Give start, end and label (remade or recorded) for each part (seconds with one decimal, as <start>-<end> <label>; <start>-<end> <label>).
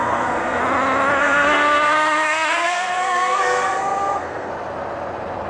0.0-0.6 remade; 0.6-1.2 recorded; 1.2-4.5 remade; 4.5-5.5 recorded